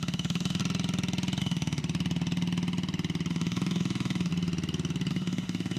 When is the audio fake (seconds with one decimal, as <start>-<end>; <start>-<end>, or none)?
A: 0.0-0.6; 1.4-1.8; 3.3-4.3; 5.1-5.8